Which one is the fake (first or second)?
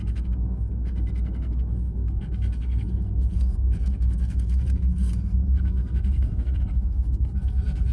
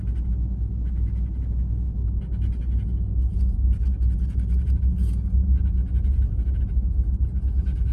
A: first